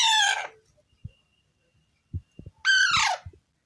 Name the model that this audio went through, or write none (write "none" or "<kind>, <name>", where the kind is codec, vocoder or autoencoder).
none